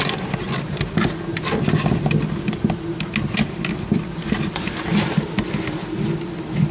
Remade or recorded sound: recorded